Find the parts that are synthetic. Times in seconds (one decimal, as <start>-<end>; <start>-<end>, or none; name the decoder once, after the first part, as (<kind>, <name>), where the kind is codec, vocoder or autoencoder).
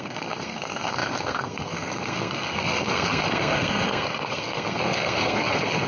0.0-5.9 (codec, SNAC)